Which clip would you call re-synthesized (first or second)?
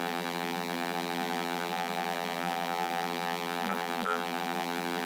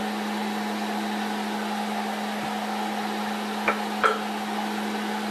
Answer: first